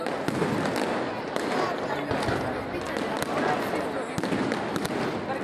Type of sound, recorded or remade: recorded